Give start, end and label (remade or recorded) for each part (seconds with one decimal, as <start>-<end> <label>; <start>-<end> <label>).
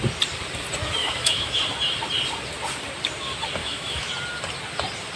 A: 0.0-1.0 recorded; 1.0-1.6 remade; 1.6-3.6 recorded; 3.6-4.1 remade; 4.1-5.2 recorded